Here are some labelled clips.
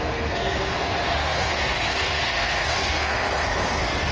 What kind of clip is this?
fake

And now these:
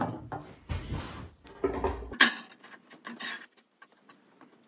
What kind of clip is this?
real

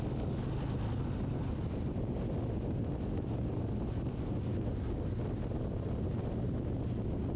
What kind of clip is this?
real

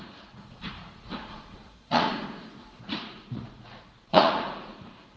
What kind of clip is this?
fake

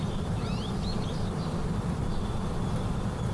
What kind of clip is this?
real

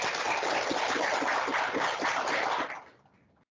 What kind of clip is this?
real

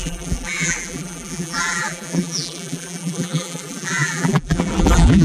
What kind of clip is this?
fake